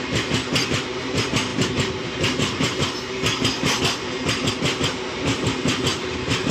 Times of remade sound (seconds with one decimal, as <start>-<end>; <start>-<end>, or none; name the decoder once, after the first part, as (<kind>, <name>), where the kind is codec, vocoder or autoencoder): none